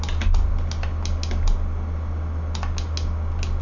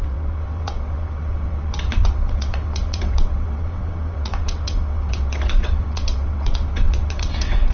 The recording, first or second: first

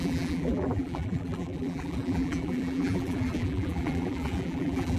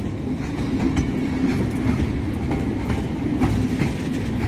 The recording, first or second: second